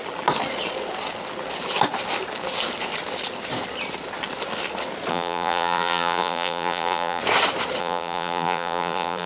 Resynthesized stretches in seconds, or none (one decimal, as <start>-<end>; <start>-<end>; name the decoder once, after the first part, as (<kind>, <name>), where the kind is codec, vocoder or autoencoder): 5.1-7.2 (vocoder, BigVGAN v2); 7.8-9.3

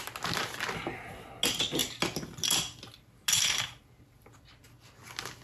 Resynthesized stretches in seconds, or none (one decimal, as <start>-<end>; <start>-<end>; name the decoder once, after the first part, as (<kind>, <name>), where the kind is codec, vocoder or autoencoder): none

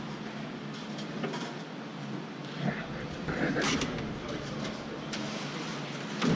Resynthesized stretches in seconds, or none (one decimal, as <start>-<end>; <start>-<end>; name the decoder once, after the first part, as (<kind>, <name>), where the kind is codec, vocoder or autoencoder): 1.9-5.7 (vocoder, BigVGAN v2)